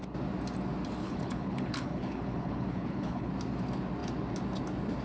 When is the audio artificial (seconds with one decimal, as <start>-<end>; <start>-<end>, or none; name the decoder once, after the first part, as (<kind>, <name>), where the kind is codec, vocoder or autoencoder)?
1.0-3.3 (codec, HILCodec)